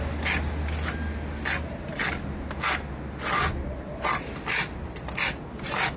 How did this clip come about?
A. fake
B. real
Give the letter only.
B